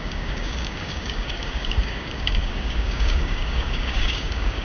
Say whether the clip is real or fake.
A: fake